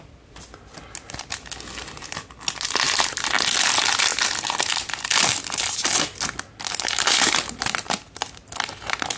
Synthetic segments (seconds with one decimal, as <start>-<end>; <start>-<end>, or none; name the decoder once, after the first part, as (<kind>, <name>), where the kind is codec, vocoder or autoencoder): none